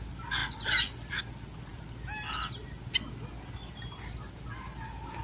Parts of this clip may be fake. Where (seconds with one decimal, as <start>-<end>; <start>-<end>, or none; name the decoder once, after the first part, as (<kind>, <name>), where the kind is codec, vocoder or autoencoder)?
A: none